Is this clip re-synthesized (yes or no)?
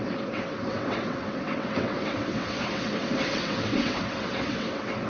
yes